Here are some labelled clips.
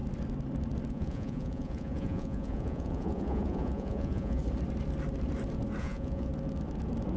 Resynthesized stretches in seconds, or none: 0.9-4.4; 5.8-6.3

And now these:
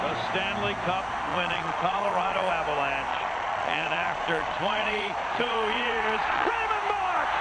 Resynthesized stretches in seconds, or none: 1.3-2.5; 3.1-6.5

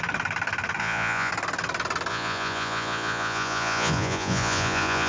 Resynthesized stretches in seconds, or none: 0.8-1.3; 2.1-5.1

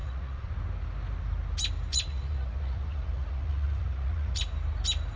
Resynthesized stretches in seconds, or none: 0.0-0.5; 1.9-4.4

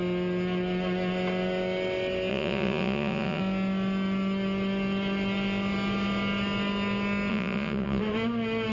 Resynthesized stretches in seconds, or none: 2.3-3.4; 7.3-8.0

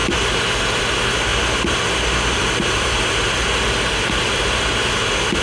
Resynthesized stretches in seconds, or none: none

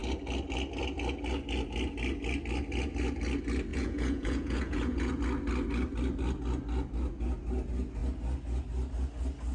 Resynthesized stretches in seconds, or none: 3.7-5.2

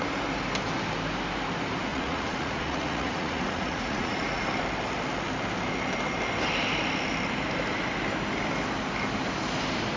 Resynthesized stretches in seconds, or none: 1.9-4.5